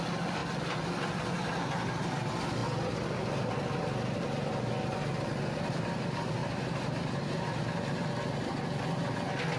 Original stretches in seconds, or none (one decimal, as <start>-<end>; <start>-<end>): 0.0-6.4; 7.6-9.6